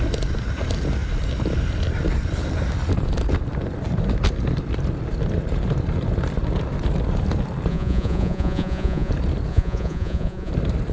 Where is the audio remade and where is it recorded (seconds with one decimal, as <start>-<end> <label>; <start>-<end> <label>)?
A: 0.0-7.7 recorded; 7.7-9.1 remade; 9.1-9.5 recorded; 9.5-10.5 remade; 10.5-10.9 recorded